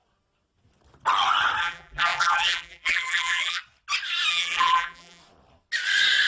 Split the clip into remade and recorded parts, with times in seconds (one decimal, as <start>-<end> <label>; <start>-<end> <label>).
0.0-1.6 recorded; 1.6-3.6 remade; 3.6-4.3 recorded; 4.3-5.2 remade; 5.2-6.3 recorded